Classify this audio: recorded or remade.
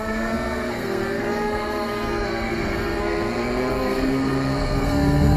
remade